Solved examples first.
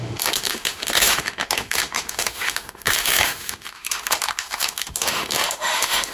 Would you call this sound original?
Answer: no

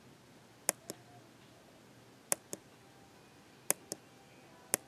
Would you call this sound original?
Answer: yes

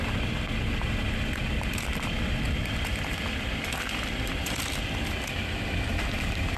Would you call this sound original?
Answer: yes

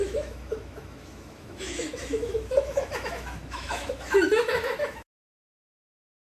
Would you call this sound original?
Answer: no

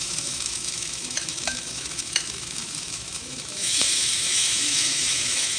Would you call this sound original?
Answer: no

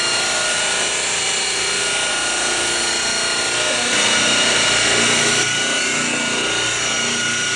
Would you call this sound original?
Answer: yes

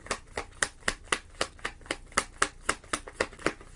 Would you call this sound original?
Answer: yes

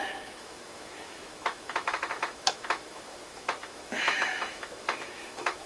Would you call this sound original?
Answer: no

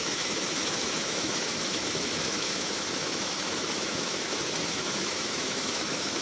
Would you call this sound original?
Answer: no